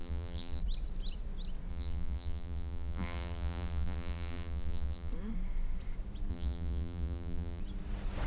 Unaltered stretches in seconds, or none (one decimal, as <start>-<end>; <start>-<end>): 0.6-1.7; 5.1-6.3; 7.6-8.3